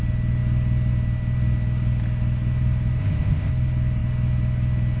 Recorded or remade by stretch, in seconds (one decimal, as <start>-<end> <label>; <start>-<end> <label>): 0.0-3.0 recorded; 3.0-3.5 remade; 3.5-5.0 recorded